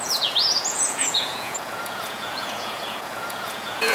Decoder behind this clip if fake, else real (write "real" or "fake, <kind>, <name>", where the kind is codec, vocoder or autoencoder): fake, vocoder, Vocos